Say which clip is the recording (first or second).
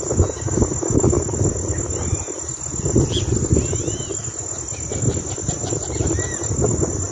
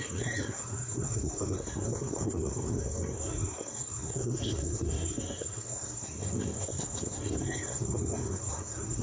first